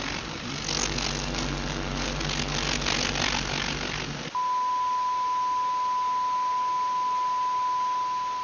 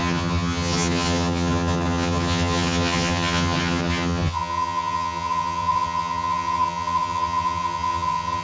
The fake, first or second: second